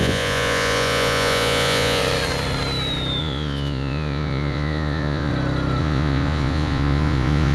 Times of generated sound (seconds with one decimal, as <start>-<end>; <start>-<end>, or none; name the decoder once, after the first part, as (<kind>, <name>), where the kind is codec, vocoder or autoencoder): 0.0-2.0 (vocoder, Vocos); 3.2-5.3; 5.8-7.5